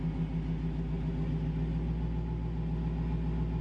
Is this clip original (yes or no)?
yes